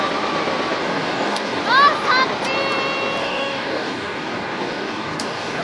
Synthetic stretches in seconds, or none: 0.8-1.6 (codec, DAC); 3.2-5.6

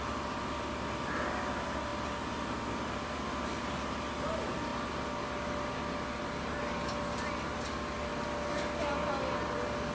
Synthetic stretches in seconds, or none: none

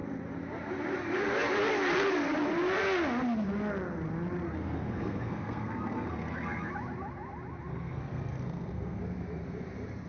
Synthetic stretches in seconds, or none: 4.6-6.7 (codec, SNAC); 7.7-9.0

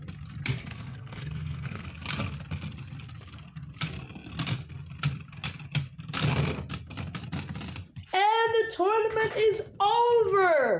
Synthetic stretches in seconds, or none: 0.6-1.9 (codec, SNAC)

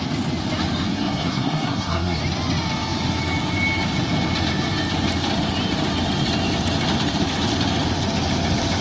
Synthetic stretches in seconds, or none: 0.9-2.2 (codec, SNAC)

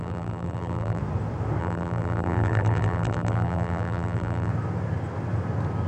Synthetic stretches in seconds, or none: 0.0-1.0 (vocoder, BigVGAN v2); 1.6-4.5

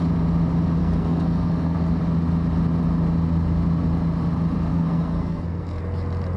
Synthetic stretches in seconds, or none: 0.8-2.0 (codec, SNAC); 4.7-5.8

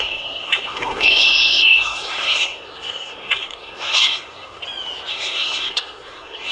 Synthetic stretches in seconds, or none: 0.0-4.6 (codec, SNAC); 5.1-6.5